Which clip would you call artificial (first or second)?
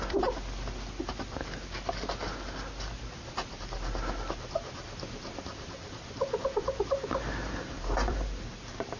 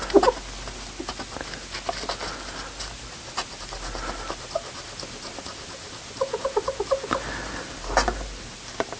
first